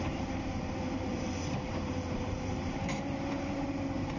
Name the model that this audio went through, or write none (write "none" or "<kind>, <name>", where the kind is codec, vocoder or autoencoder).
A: vocoder, BigVGAN v2